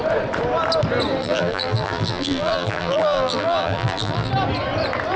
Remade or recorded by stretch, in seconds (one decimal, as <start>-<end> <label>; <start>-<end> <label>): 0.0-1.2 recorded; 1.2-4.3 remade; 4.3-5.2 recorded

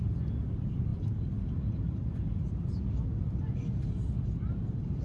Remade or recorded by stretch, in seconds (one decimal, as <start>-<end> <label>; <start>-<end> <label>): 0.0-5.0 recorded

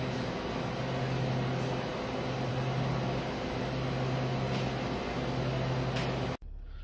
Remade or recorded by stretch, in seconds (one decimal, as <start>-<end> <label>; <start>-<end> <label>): 0.0-6.8 recorded

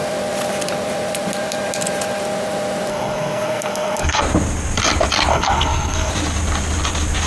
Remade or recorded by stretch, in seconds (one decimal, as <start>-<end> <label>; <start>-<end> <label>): 0.0-2.9 recorded; 2.9-4.2 remade; 4.2-5.3 recorded; 5.3-6.1 remade; 6.1-7.3 recorded